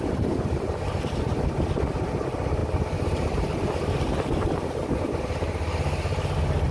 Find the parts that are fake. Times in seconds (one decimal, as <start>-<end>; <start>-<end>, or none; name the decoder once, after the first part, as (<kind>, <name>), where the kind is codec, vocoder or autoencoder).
none